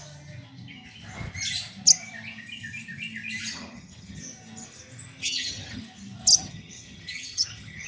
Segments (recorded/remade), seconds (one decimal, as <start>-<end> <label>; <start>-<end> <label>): 0.0-3.5 recorded; 3.5-4.2 remade; 4.2-5.2 recorded; 5.2-5.8 remade; 5.8-6.3 recorded; 6.3-7.9 remade